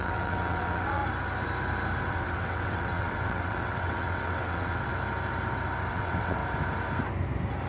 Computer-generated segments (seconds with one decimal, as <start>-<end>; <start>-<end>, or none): 0.0-1.0; 2.0-4.9; 5.9-6.4

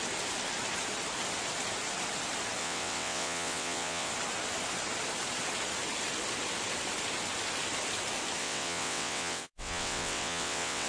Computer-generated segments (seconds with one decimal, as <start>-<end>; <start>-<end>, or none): 2.6-4.1; 8.4-10.9

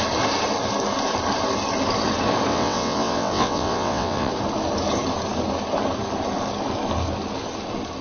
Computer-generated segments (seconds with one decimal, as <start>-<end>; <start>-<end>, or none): 2.5-4.3

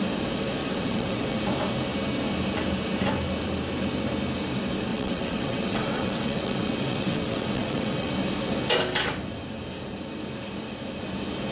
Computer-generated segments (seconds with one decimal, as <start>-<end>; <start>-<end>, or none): 0.6-1.4; 4.9-8.1

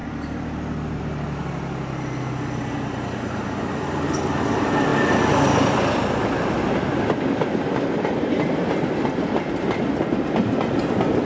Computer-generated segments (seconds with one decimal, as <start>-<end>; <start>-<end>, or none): none

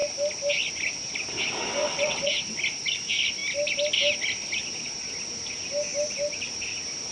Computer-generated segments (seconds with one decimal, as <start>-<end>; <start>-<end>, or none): 1.8-2.3